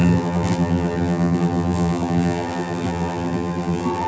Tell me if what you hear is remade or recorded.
remade